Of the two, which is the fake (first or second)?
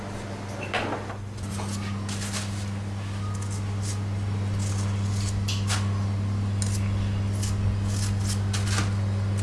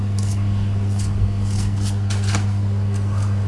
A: second